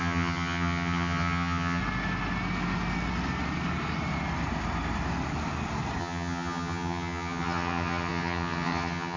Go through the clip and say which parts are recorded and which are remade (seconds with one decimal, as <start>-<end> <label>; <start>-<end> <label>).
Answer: 0.0-1.8 remade; 1.8-6.0 recorded; 6.0-9.2 remade